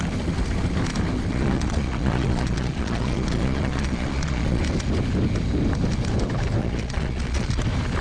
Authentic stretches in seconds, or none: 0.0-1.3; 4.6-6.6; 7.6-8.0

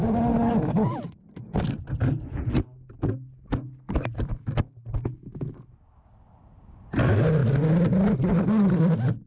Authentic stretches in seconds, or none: 0.0-9.3

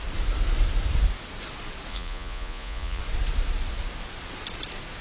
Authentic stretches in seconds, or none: 0.0-1.9; 3.0-5.0